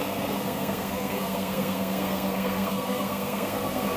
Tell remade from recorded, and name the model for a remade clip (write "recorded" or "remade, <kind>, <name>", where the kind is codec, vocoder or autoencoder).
remade, codec, SNAC